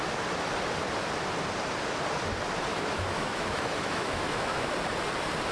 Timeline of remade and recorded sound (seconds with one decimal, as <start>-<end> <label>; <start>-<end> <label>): 0.0-2.7 recorded; 2.7-4.7 remade; 4.7-5.5 recorded